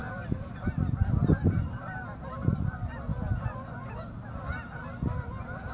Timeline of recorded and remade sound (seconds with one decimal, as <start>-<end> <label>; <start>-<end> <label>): 0.0-3.1 remade; 3.1-4.2 recorded; 4.2-5.7 remade